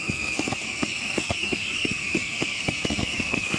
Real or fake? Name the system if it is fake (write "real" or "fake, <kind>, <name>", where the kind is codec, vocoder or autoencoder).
fake, codec, SNAC